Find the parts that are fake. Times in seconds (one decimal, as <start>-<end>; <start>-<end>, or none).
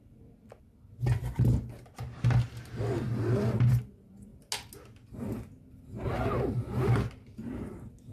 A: none